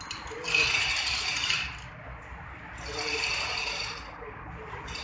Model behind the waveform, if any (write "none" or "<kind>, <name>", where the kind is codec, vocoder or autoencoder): none